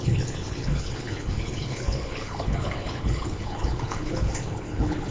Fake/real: fake